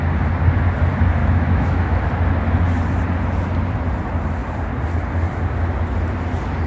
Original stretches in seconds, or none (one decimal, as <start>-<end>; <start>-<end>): 0.0-1.2; 2.0-6.7